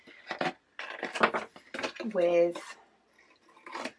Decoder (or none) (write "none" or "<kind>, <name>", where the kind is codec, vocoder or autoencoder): none